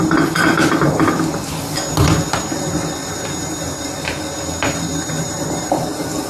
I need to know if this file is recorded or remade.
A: recorded